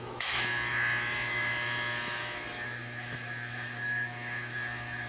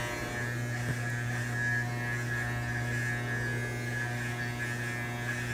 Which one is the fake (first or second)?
first